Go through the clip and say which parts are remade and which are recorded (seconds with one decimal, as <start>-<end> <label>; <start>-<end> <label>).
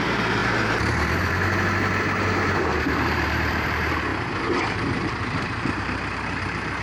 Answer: 0.0-4.1 remade; 4.1-4.6 recorded; 4.6-6.8 remade